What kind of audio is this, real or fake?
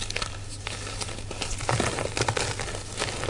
real